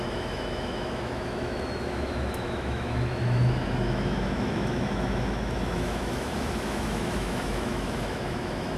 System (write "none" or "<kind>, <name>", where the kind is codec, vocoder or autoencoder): autoencoder, DAC-VAE